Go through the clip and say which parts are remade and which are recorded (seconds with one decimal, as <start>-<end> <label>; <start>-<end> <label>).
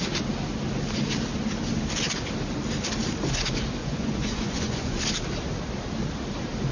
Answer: 0.0-3.8 recorded; 3.8-5.0 remade; 5.0-6.7 recorded